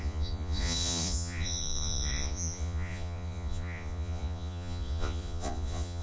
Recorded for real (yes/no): no